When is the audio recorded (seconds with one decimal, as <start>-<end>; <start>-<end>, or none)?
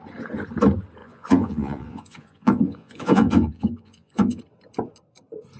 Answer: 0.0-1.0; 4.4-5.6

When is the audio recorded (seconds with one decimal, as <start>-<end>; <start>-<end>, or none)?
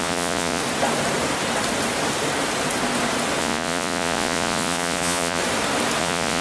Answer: 0.6-3.4; 5.4-6.0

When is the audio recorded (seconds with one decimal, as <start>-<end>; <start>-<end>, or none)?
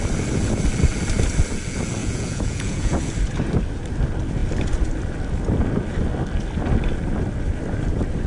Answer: 0.0-2.0; 3.0-8.3